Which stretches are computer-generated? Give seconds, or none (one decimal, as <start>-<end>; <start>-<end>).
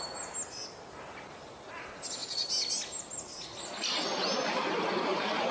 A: none